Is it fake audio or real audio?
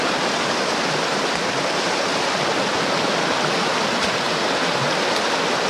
real